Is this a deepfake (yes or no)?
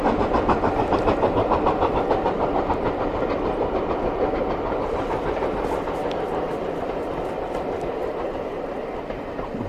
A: no